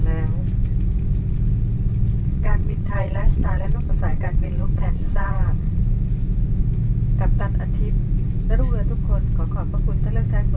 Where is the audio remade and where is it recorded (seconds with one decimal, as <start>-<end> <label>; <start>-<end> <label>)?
0.0-2.3 recorded; 2.3-5.8 remade; 5.8-10.6 recorded